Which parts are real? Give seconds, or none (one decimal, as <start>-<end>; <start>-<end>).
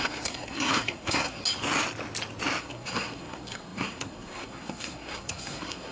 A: 1.4-2.6